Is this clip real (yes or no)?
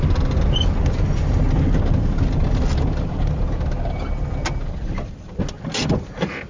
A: yes